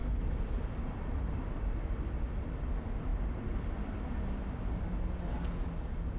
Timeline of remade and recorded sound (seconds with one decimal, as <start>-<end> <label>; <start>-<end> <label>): 0.0-1.6 remade; 1.6-6.2 recorded